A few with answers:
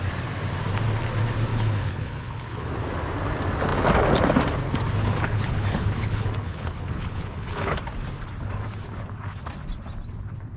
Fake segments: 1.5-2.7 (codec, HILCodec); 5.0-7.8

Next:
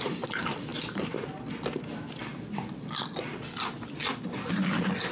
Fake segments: none

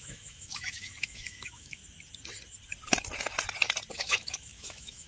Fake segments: 0.0-1.8 (autoencoder, DAC-VAE); 3.9-5.1